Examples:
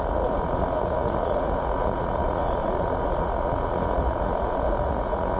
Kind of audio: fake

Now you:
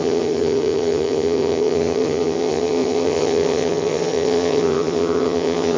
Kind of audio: fake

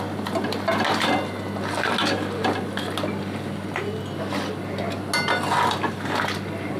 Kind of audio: real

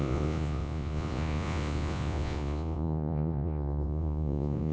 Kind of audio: fake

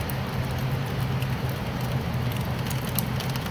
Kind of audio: real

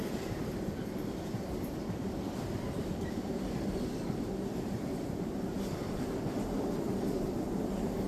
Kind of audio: fake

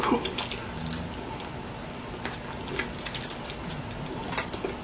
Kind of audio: real